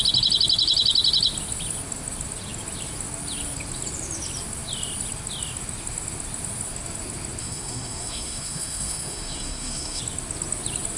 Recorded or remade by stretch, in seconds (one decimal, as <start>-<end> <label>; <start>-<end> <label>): 0.0-7.4 recorded; 7.4-10.0 remade; 10.0-11.0 recorded